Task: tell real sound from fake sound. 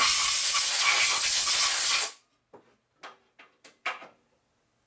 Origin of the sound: real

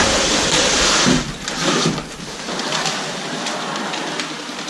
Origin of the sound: fake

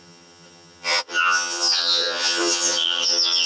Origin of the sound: fake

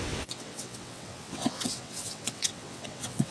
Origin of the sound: fake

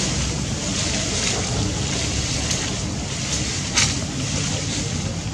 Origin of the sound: real